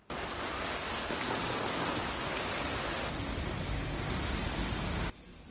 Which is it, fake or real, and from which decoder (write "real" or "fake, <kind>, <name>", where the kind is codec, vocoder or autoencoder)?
real